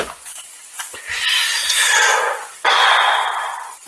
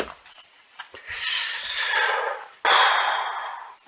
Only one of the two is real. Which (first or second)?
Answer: second